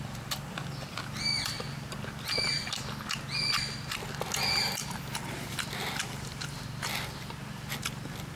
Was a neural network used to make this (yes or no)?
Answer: no